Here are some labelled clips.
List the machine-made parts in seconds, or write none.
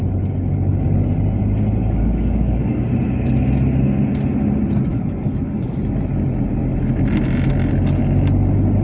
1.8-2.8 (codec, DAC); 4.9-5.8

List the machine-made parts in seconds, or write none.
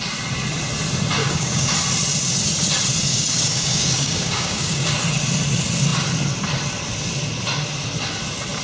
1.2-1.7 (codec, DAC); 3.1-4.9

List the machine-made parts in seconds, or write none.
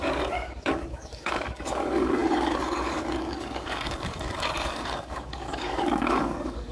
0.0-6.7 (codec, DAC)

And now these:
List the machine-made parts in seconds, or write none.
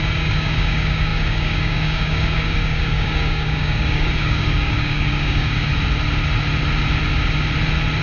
0.0-5.7 (codec, DAC)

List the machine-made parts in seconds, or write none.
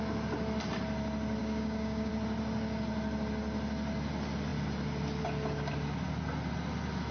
1.4-2.1 (codec, DAC)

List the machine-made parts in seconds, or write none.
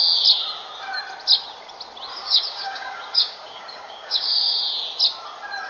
2.1-4.6 (codec, DAC)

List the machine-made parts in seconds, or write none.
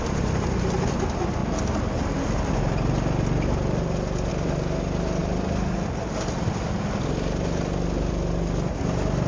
none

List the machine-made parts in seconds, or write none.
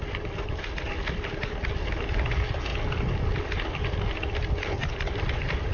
none